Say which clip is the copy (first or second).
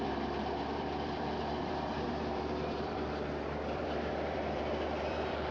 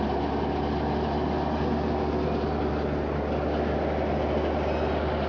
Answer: first